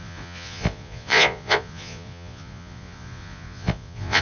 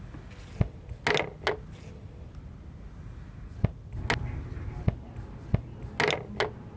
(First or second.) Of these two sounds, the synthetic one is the first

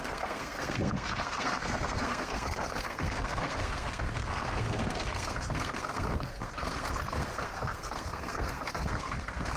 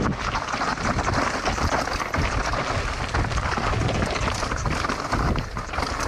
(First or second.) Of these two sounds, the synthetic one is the first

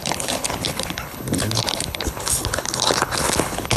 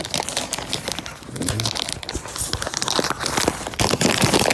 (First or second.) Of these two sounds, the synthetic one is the first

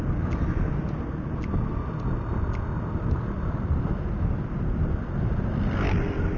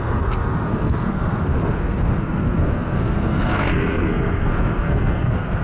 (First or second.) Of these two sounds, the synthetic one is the second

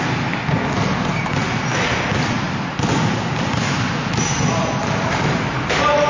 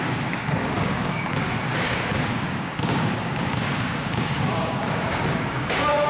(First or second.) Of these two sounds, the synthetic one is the second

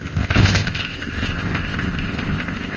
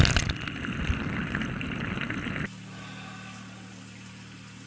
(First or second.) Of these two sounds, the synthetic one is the first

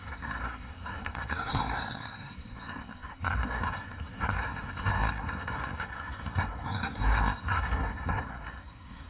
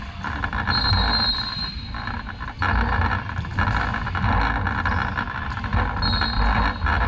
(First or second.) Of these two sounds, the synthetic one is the first